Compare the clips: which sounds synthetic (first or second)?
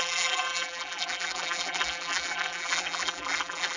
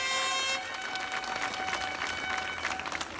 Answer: first